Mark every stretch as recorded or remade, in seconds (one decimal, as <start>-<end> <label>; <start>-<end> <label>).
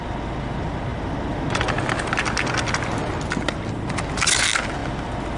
0.0-5.4 recorded